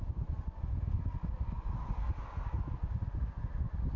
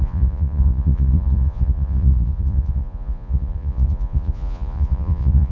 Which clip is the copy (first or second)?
second